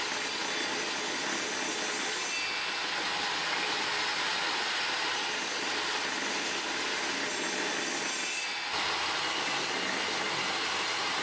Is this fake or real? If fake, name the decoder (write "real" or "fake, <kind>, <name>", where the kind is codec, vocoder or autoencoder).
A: real